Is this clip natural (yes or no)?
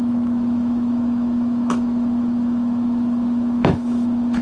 no